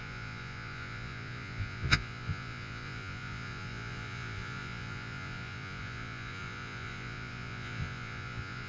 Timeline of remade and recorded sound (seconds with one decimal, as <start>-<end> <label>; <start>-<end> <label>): 0.0-8.7 remade